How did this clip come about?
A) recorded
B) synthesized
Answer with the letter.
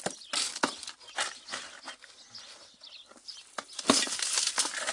A